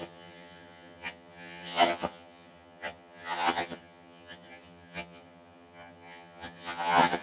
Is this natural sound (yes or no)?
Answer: no